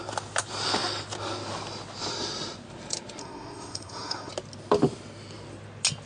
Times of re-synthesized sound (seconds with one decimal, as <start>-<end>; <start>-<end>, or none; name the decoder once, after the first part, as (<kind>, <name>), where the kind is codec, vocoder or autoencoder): 3.2-4.3 (codec, SNAC)